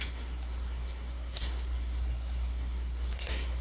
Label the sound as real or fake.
fake